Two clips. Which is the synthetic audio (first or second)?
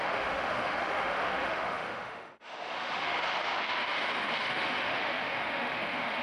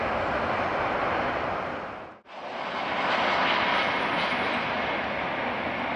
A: first